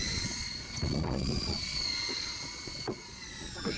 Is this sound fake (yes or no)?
yes